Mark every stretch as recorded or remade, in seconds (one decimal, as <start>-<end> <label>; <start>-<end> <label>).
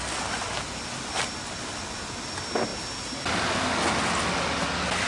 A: 0.0-5.1 recorded